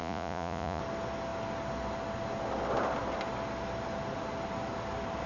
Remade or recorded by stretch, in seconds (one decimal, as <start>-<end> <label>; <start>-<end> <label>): 0.0-0.8 remade; 0.8-5.3 recorded